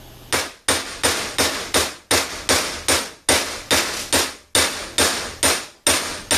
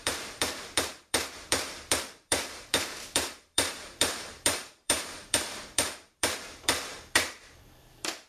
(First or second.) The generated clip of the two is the second